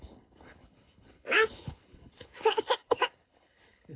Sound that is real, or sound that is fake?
fake